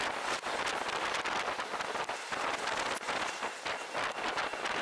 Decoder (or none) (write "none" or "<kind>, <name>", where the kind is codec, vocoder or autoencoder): none